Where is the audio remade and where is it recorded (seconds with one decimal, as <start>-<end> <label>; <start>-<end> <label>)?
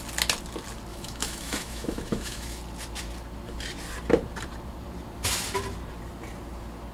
0.0-0.9 recorded; 0.9-2.6 remade; 2.6-6.9 recorded